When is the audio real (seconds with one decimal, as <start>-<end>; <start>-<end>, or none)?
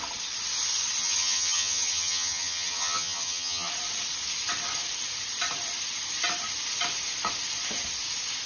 0.0-1.0; 3.7-8.5